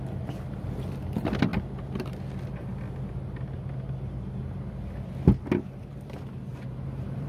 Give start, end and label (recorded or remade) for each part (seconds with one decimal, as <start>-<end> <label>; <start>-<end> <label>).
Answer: 0.0-6.5 recorded; 6.5-7.3 remade